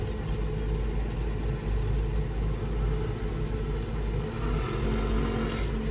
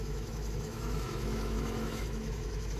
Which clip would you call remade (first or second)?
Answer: second